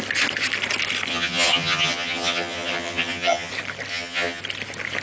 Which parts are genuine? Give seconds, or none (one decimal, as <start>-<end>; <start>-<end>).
0.0-1.1; 3.5-3.9; 4.4-5.0